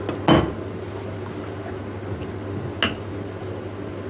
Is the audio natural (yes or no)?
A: yes